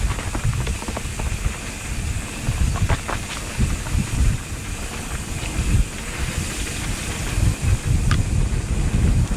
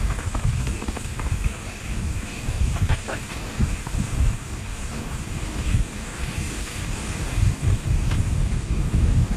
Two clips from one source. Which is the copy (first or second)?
second